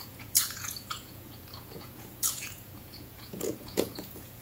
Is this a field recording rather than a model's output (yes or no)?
no